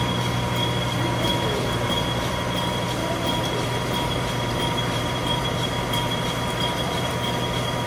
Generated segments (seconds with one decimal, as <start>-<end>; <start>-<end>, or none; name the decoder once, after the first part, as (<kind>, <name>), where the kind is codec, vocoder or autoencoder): 1.3-2.3 (vocoder, BigVGAN v2); 3.0-7.1